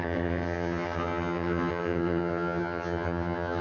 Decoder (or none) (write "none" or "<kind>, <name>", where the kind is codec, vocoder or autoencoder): vocoder, HiFi-GAN